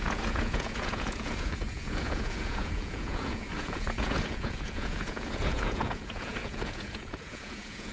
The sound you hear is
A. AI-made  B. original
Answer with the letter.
A